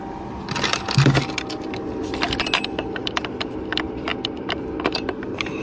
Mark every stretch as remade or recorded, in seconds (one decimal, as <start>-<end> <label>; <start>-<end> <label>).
0.0-5.6 recorded